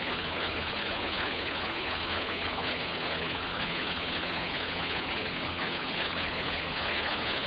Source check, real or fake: fake